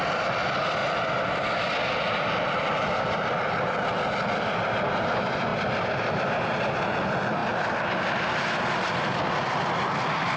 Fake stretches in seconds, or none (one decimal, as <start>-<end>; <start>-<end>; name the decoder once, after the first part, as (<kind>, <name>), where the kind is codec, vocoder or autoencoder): none